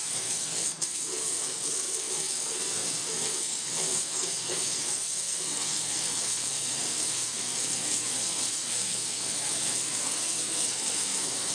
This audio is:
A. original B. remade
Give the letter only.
B